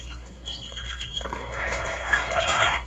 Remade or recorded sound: remade